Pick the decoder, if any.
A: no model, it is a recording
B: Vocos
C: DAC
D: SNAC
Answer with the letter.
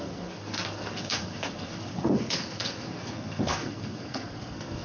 D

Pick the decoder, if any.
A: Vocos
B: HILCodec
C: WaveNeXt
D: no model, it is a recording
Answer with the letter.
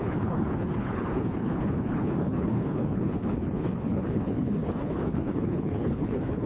B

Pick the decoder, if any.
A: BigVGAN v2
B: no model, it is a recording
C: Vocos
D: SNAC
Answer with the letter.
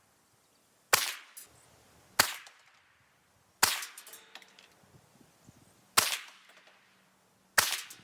B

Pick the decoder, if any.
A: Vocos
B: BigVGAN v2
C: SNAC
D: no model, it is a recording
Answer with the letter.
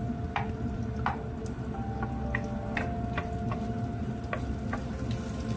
D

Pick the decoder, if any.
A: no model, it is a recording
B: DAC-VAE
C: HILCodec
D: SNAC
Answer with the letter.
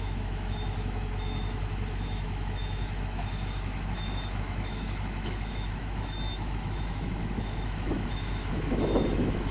B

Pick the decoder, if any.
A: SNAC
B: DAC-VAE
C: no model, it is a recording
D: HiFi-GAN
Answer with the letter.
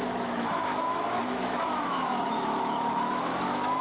B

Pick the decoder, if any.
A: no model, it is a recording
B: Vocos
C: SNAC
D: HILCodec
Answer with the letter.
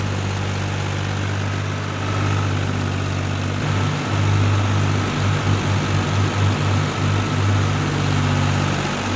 A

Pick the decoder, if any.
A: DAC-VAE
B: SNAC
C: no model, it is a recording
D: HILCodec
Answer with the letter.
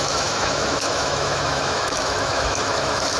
A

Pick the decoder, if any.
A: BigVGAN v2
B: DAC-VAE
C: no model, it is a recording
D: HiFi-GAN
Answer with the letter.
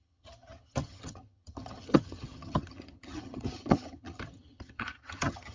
D